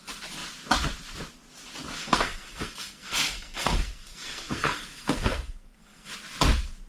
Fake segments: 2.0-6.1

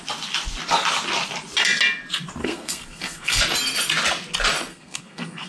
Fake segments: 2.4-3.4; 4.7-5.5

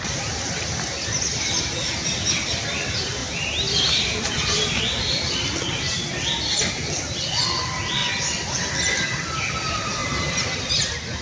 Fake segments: none

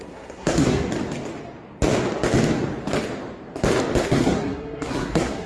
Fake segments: 0.0-0.9; 4.0-5.5

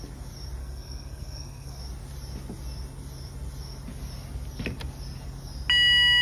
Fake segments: 0.6-1.8

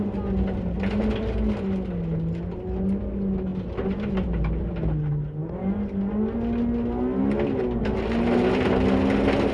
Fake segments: none